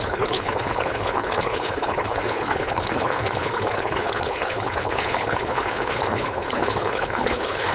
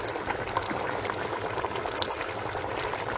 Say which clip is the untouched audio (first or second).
second